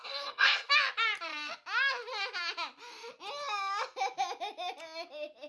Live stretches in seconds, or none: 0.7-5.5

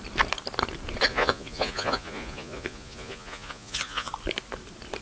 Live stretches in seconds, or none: 0.0-1.1; 4.1-5.0

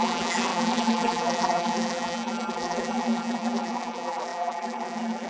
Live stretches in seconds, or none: none

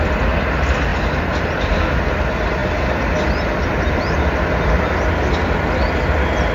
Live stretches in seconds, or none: 0.0-6.5

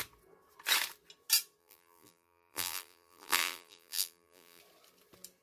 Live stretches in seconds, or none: 0.0-1.6; 4.6-5.4

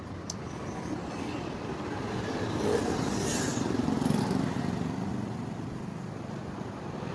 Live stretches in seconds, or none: 0.0-7.1